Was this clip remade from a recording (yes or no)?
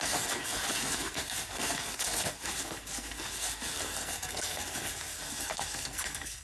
yes